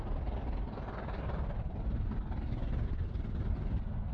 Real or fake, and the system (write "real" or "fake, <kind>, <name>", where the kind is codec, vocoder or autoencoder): real